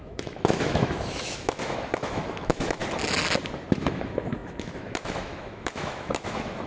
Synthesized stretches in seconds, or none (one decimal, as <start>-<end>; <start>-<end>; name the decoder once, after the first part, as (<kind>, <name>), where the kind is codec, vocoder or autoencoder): 0.0-2.8 (autoencoder, DAC-VAE); 3.7-6.7